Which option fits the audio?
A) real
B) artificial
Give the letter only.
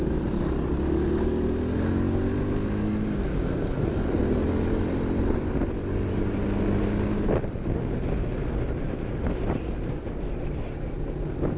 A